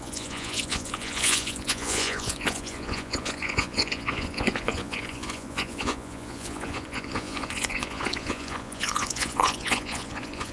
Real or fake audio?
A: fake